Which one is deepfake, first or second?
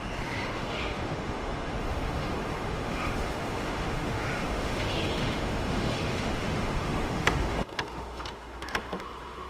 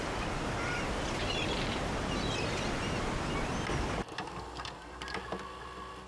first